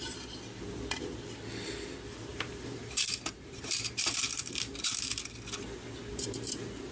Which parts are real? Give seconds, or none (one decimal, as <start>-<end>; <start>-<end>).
0.0-2.3; 5.2-6.1